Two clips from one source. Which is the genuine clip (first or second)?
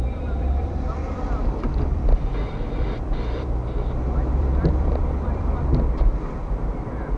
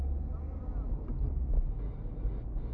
second